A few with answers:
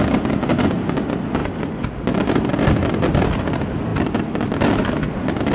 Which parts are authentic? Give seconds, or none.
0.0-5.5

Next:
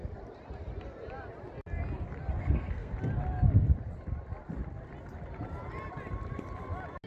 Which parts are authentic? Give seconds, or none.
0.0-2.4; 2.9-7.1

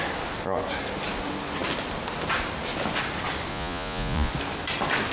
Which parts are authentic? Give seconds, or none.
0.0-3.5; 4.3-5.1

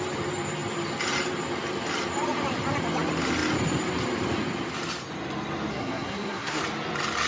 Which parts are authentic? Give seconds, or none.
0.0-5.7; 6.6-7.3

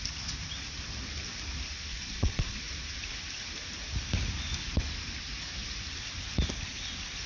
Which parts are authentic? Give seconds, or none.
0.0-1.9; 2.6-7.3

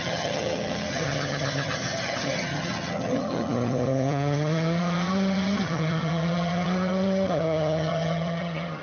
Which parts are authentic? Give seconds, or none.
none

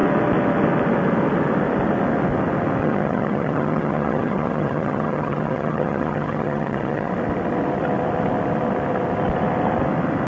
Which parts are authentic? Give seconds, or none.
0.0-2.8; 7.1-10.3

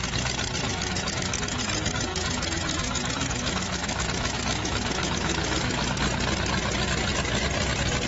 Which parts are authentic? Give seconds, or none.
0.0-0.7; 1.6-2.1; 6.0-8.1